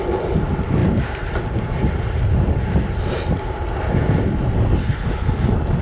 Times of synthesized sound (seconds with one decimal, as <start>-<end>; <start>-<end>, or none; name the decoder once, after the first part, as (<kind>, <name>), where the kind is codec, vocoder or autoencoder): 0.8-4.3 (vocoder, BigVGAN v2)